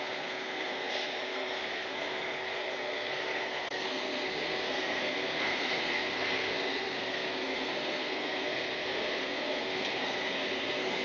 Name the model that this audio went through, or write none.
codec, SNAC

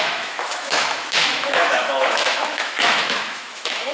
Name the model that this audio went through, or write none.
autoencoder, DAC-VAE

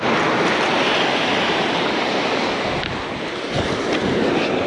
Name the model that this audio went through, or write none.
none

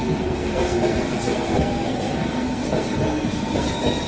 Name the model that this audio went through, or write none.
codec, SNAC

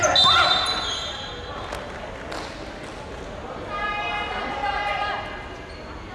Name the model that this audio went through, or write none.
none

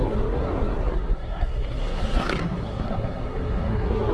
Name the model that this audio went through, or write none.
codec, SNAC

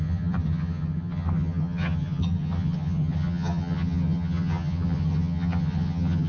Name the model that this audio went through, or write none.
vocoder, HiFi-GAN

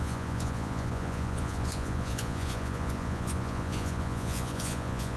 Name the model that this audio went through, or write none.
vocoder, Vocos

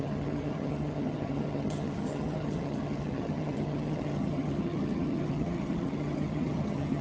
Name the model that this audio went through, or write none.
vocoder, HiFi-GAN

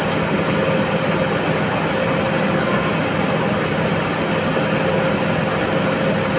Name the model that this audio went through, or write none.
none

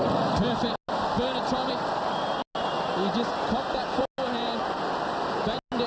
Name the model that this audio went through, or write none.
none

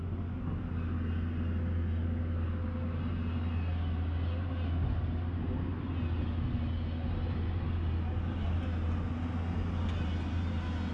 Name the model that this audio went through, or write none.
none